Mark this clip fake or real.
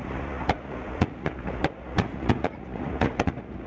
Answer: fake